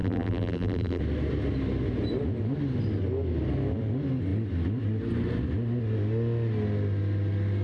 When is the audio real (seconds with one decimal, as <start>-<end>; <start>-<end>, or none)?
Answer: 1.0-7.6